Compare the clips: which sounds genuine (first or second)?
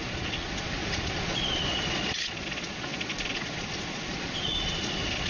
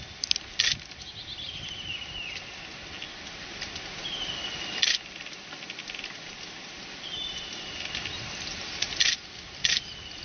second